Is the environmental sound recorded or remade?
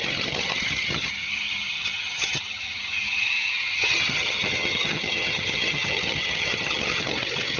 remade